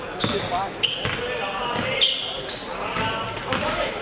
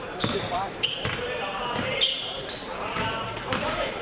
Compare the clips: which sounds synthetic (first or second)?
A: second